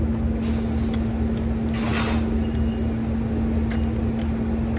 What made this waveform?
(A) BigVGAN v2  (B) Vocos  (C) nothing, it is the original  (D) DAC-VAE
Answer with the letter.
C